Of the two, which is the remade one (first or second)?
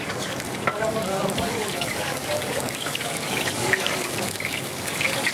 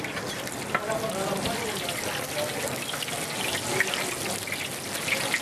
first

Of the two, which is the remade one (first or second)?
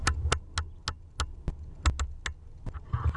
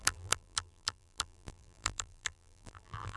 second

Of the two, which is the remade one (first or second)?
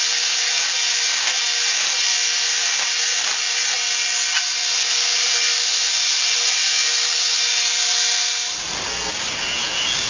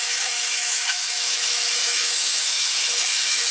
second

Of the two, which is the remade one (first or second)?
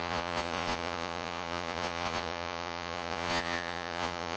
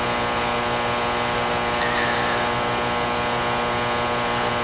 first